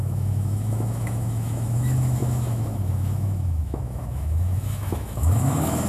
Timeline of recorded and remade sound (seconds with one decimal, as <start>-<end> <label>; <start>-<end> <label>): 0.0-5.9 remade